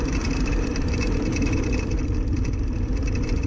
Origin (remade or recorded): remade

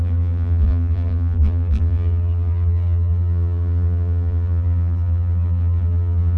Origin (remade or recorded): remade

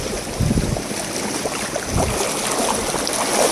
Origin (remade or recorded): recorded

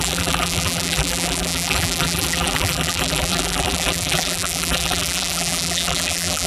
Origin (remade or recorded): remade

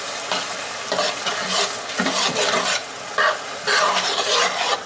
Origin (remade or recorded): recorded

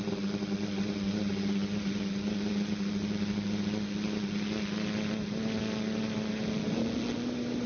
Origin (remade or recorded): recorded